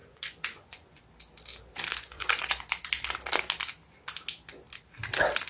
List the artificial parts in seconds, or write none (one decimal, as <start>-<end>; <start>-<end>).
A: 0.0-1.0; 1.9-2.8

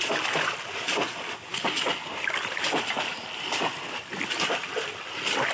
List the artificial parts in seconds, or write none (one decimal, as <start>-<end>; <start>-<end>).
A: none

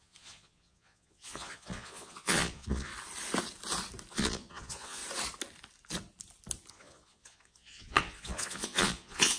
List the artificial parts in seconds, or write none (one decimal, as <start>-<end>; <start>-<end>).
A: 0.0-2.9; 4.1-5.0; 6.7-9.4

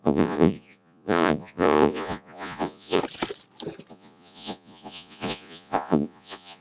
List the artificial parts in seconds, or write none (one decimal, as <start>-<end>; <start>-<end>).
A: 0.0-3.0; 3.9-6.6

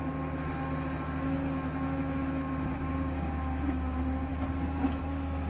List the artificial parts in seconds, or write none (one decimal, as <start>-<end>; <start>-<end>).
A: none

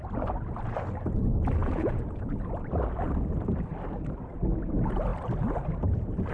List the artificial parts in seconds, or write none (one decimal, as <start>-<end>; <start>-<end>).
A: 1.6-2.5